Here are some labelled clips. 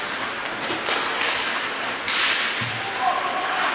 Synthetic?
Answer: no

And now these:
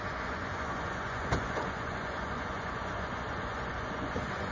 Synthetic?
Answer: yes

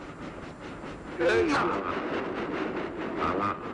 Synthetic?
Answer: no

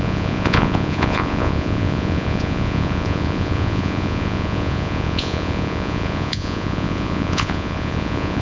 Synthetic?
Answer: yes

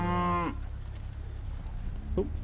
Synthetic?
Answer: no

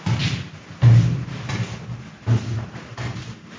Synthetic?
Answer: no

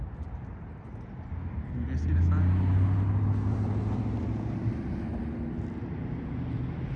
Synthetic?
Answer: no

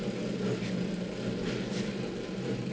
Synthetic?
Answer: no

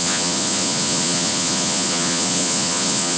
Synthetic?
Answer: yes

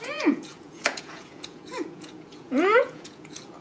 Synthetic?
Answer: yes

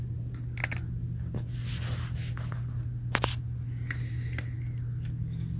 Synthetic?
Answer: no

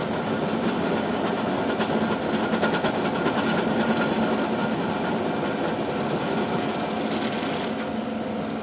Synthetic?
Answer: no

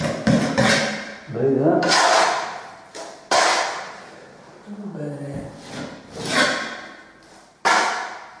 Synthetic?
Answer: no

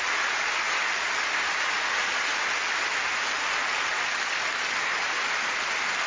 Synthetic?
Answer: no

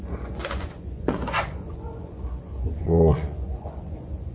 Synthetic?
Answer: yes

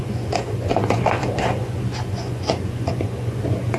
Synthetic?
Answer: yes